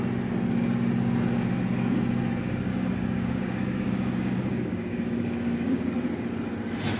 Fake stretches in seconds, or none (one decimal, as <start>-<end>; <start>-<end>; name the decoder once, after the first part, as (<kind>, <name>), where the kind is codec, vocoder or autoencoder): 2.7-5.9 (codec, DAC)